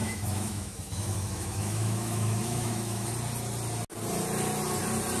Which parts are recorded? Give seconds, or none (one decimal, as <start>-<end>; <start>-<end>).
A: 3.1-5.2